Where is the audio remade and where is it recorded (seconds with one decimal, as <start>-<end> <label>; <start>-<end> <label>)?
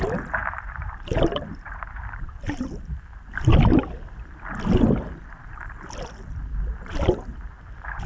0.0-0.4 recorded; 0.4-2.8 remade; 2.8-8.1 recorded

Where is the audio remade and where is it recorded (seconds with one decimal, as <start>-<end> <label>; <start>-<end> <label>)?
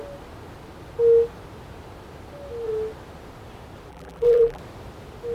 0.0-3.9 recorded; 3.9-4.6 remade; 4.6-5.3 recorded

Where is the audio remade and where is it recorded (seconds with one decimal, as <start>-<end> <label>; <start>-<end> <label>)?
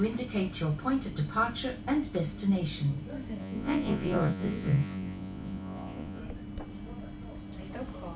0.0-3.4 recorded; 3.4-6.2 remade; 6.2-8.2 recorded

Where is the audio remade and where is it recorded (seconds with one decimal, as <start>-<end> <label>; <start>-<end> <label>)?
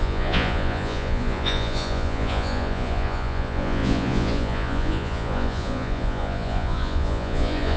0.0-7.8 remade